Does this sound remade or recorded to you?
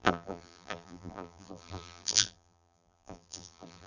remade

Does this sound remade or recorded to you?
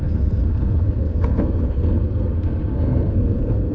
remade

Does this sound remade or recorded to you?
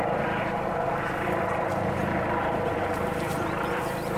remade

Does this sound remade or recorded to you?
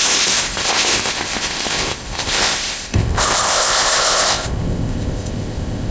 remade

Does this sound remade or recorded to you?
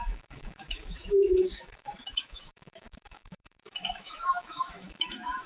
remade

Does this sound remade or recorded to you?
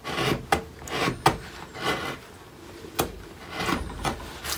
recorded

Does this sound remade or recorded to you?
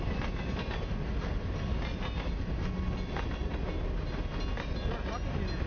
recorded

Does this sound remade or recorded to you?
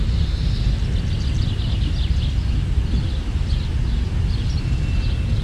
recorded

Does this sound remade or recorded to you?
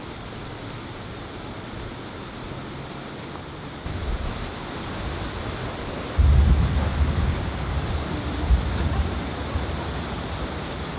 recorded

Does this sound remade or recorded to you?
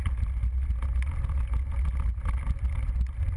recorded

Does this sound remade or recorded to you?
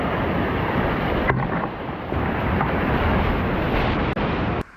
recorded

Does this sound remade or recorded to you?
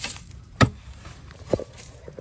remade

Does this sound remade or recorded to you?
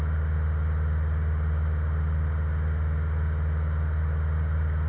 recorded